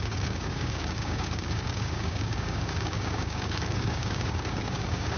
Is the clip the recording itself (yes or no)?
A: no